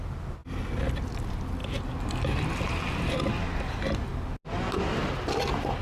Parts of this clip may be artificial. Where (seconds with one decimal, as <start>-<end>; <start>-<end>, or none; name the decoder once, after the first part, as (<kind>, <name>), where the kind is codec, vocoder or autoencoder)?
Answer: none